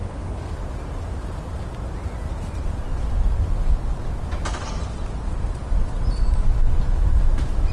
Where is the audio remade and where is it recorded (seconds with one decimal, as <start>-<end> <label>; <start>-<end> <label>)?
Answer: 0.0-0.5 remade; 0.5-7.7 recorded